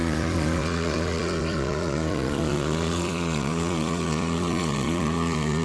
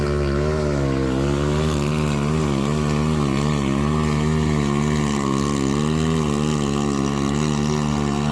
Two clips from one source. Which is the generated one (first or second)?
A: first